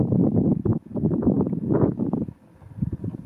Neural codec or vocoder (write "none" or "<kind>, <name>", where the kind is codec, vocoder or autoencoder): none